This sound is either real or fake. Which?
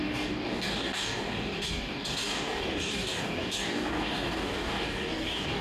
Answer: fake